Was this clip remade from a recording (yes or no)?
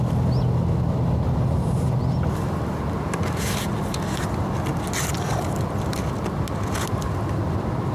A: no